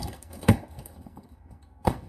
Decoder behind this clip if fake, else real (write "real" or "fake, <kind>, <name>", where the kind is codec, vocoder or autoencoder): fake, codec, SNAC